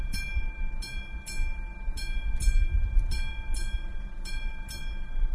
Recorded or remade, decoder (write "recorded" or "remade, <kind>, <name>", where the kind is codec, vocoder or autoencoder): recorded